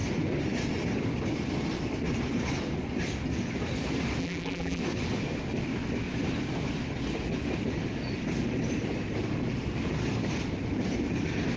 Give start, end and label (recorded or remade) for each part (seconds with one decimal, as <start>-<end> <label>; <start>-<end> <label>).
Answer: 0.0-4.2 recorded; 4.2-4.8 remade; 4.8-11.6 recorded